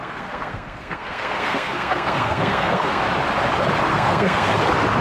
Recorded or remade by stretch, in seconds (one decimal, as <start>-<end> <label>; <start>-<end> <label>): 0.0-3.0 remade; 3.0-3.9 recorded; 3.9-4.5 remade; 4.5-5.0 recorded